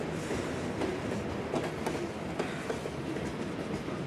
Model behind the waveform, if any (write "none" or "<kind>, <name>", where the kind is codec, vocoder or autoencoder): none